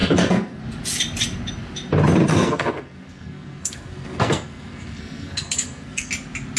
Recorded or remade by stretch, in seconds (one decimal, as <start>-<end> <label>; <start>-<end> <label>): 0.0-0.6 remade; 0.6-2.3 recorded; 2.3-6.1 remade; 6.1-6.6 recorded